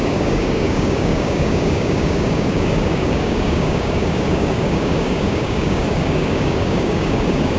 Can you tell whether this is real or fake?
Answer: fake